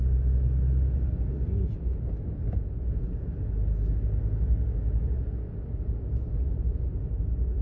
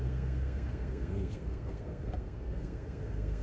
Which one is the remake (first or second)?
second